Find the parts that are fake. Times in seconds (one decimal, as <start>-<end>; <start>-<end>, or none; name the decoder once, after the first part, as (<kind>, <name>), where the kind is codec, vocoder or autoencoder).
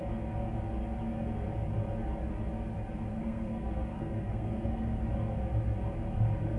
3.1-5.0 (codec, SNAC)